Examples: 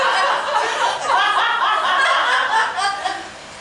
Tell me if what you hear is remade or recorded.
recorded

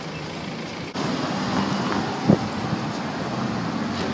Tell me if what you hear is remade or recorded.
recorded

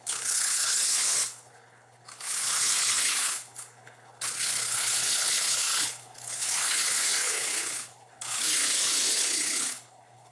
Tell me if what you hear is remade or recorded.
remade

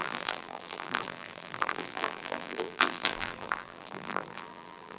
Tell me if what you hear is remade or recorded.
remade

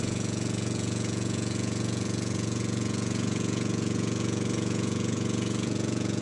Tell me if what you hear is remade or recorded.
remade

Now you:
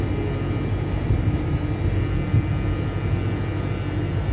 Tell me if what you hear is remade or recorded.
recorded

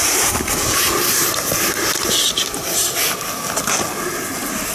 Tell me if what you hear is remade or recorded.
recorded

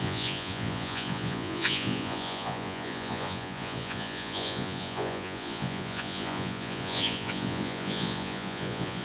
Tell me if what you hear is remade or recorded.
remade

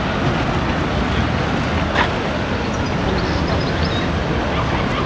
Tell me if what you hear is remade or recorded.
recorded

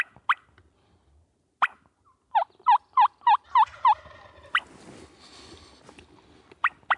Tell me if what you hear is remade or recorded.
recorded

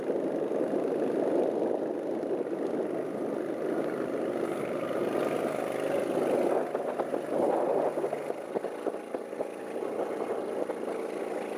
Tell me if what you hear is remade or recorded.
recorded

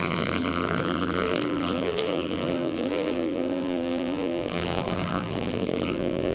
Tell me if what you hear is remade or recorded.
remade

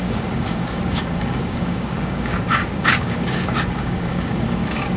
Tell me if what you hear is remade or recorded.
remade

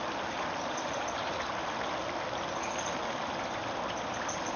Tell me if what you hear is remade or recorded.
recorded